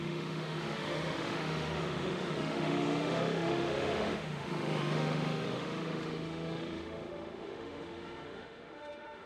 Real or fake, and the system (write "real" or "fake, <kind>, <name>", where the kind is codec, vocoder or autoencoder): fake, autoencoder, DAC-VAE